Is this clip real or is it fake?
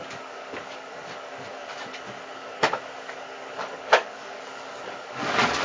fake